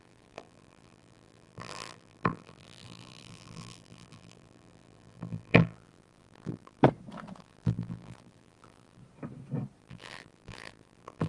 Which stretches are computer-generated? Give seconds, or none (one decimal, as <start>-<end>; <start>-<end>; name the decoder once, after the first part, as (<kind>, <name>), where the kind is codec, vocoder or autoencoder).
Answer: 0.0-6.8 (vocoder, BigVGAN v2); 7.4-9.0; 9.8-11.3